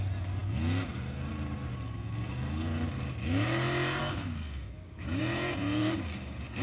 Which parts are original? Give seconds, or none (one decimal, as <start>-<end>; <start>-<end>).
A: 0.0-4.0; 5.2-5.8

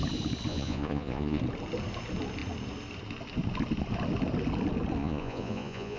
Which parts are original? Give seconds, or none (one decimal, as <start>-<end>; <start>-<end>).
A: 0.0-0.5; 1.4-5.0

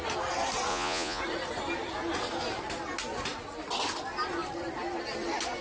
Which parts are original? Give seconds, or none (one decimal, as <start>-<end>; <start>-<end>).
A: 0.0-0.7; 1.2-5.6

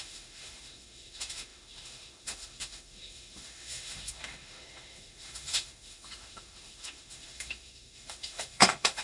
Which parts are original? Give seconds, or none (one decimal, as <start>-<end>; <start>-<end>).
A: none